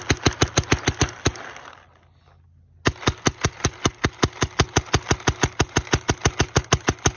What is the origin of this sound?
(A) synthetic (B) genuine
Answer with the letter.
B